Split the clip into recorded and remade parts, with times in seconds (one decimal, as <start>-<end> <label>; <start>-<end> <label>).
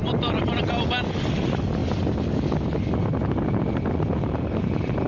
0.0-0.6 remade; 0.6-5.1 recorded